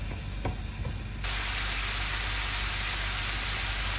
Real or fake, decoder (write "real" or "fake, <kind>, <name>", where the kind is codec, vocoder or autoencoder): real